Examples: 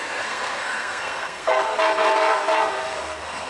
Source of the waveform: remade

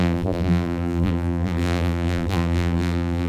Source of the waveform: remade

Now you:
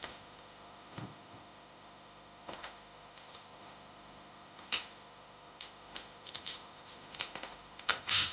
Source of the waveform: remade